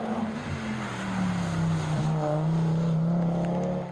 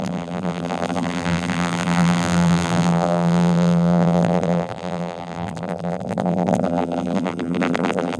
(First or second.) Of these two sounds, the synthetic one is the second